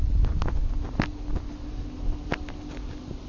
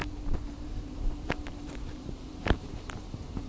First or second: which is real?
first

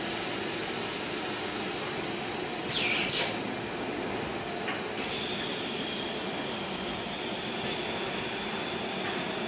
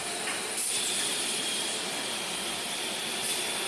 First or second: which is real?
first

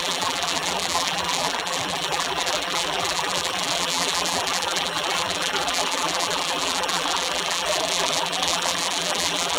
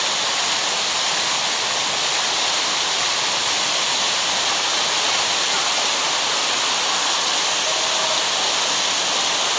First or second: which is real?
second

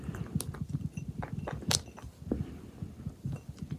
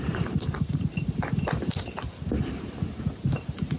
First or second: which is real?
first